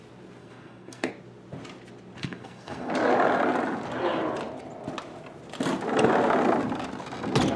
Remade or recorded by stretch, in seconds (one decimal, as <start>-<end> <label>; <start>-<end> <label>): 0.0-0.4 recorded; 0.4-1.1 remade; 1.1-2.2 recorded; 2.2-2.9 remade; 2.9-7.6 recorded